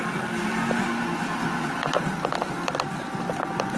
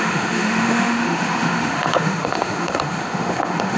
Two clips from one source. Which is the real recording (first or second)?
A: first